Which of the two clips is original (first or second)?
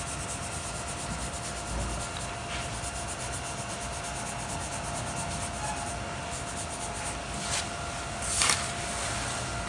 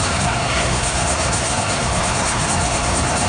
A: first